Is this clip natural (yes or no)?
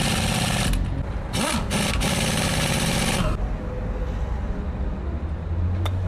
yes